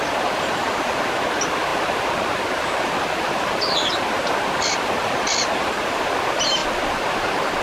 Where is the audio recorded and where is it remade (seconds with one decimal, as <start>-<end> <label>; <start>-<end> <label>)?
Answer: 0.0-7.6 recorded